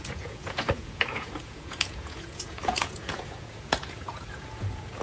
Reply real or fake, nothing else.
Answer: fake